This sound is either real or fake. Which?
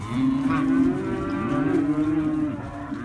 real